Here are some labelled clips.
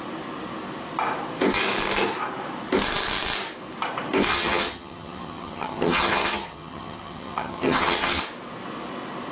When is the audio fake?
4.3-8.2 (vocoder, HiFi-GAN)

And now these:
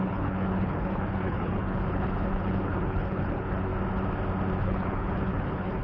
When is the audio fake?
0.0-3.7 (codec, HILCodec); 4.6-5.8

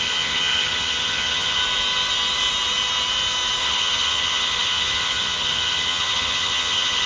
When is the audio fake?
0.0-1.6 (vocoder, HiFi-GAN); 3.6-7.1

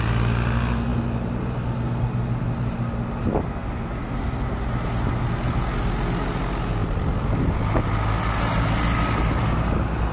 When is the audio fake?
none

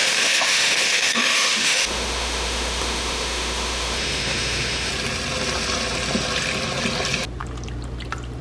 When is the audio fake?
0.0-4.9 (autoencoder, DAC-VAE)

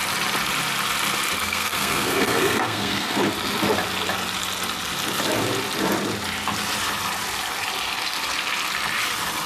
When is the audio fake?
1.4-3.2 (codec, SNAC)